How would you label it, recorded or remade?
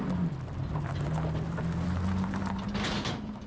recorded